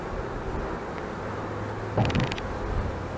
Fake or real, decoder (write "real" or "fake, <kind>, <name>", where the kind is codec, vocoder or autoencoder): real